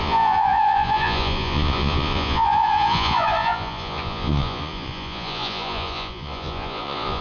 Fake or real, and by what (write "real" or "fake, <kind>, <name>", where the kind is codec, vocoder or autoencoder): fake, vocoder, Vocos